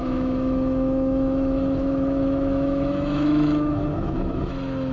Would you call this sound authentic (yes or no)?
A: no